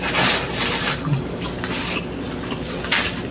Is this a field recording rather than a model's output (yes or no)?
yes